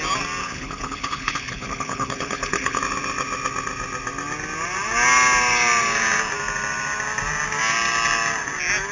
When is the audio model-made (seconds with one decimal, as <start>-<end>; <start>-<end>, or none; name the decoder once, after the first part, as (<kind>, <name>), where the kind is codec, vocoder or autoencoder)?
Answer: 0.4-2.8 (codec, HILCodec)